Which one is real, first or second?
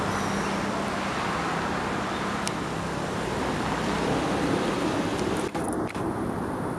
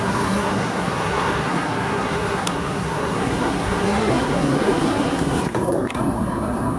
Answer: first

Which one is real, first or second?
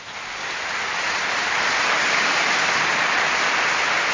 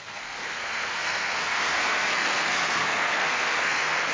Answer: first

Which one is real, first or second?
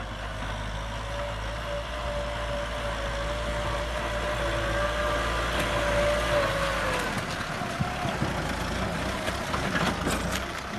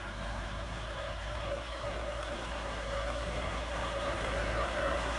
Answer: first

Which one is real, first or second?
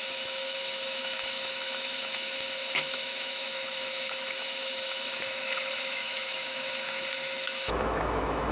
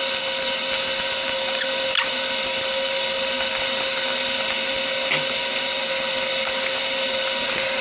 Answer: second